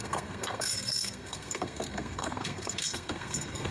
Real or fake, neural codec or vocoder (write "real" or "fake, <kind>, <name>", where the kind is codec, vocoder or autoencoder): fake, codec, SNAC